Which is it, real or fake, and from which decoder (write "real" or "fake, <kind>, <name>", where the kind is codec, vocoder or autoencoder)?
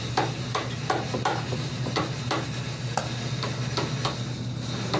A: real